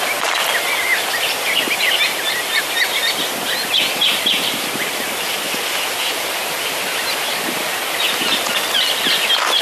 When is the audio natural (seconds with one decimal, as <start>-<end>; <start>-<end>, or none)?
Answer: 0.0-9.6